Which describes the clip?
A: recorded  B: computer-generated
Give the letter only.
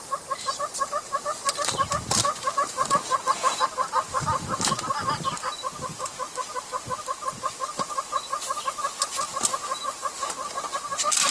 A